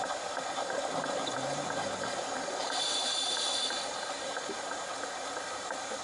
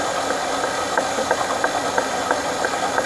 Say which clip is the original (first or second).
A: second